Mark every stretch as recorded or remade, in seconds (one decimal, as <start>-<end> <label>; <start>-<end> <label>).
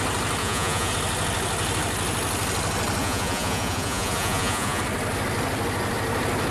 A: 0.0-0.4 recorded; 0.4-0.9 remade; 0.9-3.0 recorded; 3.0-4.8 remade; 4.8-6.5 recorded